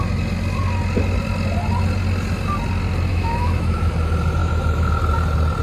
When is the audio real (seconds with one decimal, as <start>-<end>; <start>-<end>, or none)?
0.0-3.1; 3.9-4.4; 5.0-5.6